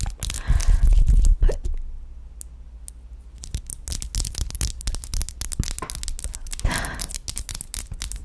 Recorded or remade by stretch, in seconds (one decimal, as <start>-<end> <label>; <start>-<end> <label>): 0.0-8.2 recorded

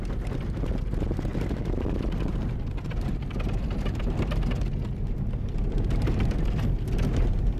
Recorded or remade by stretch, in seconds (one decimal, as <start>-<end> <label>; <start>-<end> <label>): 0.0-7.6 recorded

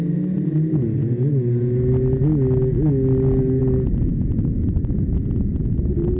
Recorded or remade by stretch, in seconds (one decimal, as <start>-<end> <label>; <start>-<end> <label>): 0.0-4.1 recorded; 4.1-5.2 remade; 5.2-6.2 recorded